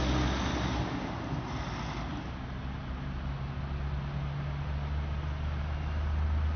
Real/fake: real